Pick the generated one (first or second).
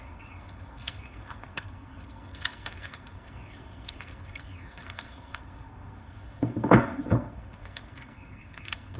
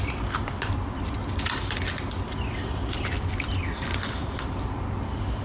first